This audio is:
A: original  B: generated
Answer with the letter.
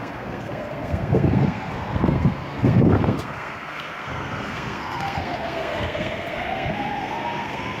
B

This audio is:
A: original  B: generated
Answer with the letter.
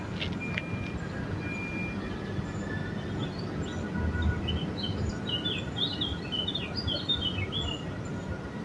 A